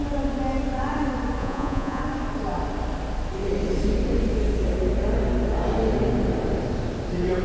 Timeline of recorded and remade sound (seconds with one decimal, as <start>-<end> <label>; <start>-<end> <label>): 0.0-1.4 recorded; 1.4-2.0 remade; 2.0-7.4 recorded